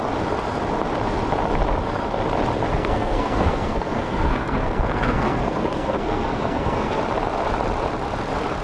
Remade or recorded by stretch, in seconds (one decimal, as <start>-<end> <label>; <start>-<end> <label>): 0.0-2.7 recorded; 2.7-7.0 remade; 7.0-8.6 recorded

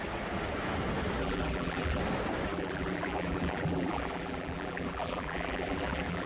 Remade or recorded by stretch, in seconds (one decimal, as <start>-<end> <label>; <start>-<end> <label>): 0.0-1.2 recorded; 1.2-2.0 remade; 2.0-2.5 recorded; 2.5-6.3 remade

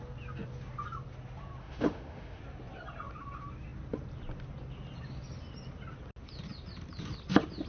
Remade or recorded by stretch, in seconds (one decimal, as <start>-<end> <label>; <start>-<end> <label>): 0.0-1.6 recorded; 1.6-2.4 remade; 2.4-7.7 recorded

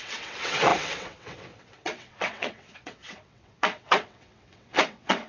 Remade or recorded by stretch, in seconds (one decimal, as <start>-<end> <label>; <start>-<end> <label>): 0.0-5.3 remade

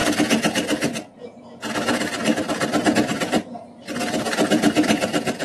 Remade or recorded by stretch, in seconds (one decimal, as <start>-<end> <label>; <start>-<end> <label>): 0.0-5.4 remade

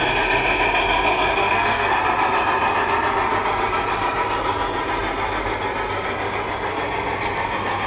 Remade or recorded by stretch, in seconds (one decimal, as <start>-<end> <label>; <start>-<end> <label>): 0.0-1.3 recorded; 1.3-1.9 remade; 1.9-7.9 recorded

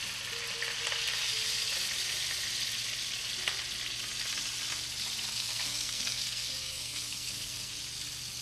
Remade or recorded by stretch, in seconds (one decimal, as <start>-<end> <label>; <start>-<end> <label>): 0.0-5.3 recorded; 5.3-7.7 remade; 7.7-8.4 recorded